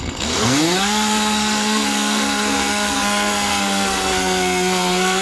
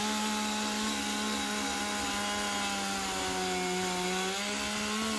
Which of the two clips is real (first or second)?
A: second